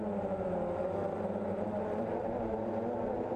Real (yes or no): yes